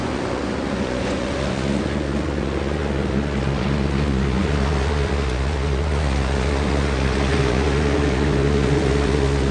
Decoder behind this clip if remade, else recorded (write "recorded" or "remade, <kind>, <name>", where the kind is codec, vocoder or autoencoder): remade, vocoder, Vocos